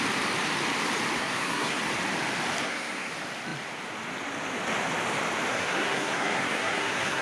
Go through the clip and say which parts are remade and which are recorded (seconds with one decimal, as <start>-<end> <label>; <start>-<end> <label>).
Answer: 0.0-1.2 recorded; 1.2-1.8 remade; 1.8-2.6 recorded; 2.6-3.1 remade; 3.1-5.5 recorded; 5.5-7.2 remade

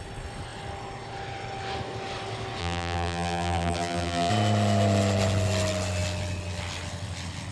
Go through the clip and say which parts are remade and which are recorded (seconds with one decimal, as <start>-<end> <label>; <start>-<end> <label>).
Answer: 0.0-2.6 recorded; 2.6-4.3 remade; 4.3-7.5 recorded

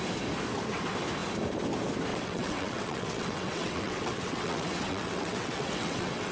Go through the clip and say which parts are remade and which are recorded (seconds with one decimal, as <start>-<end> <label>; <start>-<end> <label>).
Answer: 0.0-2.1 recorded; 2.1-6.3 remade

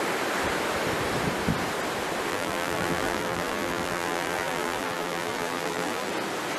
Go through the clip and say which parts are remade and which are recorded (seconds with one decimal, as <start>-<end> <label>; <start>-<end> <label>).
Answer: 0.0-2.3 recorded; 2.3-6.1 remade; 6.1-6.6 recorded

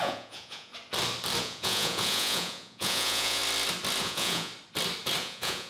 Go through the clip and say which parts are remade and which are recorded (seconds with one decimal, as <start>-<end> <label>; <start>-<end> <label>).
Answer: 0.0-0.7 remade; 0.7-1.4 recorded; 1.4-3.4 remade; 3.4-4.0 recorded; 4.0-4.5 remade; 4.5-5.2 recorded; 5.2-5.7 remade

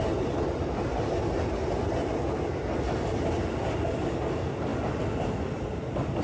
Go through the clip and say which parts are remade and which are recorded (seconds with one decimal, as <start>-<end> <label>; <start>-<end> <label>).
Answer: 0.0-6.2 recorded